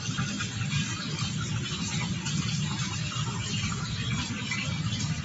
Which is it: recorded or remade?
recorded